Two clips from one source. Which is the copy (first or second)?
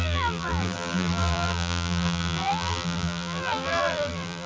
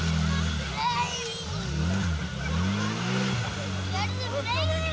first